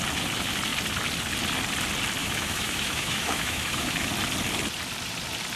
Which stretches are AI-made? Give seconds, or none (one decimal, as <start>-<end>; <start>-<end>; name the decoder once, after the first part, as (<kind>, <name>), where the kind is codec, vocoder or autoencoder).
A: 2.2-4.1 (autoencoder, DAC-VAE)